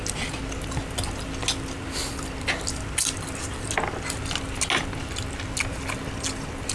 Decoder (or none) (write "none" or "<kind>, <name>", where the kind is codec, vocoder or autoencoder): none